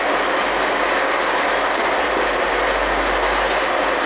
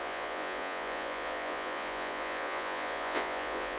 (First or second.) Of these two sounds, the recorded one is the first